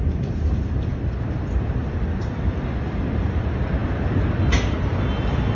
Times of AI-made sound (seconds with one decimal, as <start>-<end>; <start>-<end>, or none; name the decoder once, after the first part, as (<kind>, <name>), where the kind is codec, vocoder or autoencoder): none